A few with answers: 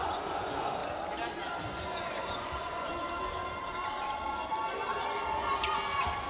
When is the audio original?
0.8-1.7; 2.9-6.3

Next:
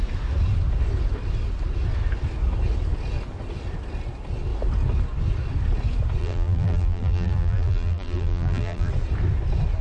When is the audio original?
0.0-6.2; 8.9-9.8